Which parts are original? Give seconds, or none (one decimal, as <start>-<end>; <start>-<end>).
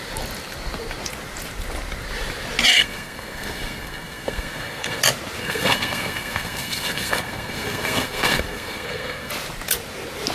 0.0-2.7; 5.0-5.4; 9.3-10.3